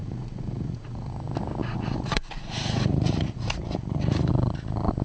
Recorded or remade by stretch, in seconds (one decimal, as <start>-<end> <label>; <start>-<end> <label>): 0.0-1.1 remade; 1.1-1.6 recorded; 1.6-4.3 remade; 4.3-5.0 recorded